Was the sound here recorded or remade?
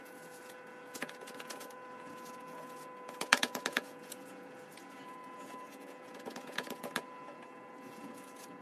remade